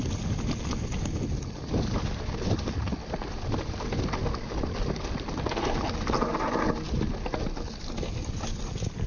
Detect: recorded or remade recorded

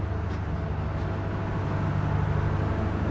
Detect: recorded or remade recorded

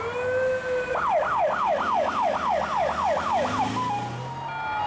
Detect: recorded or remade recorded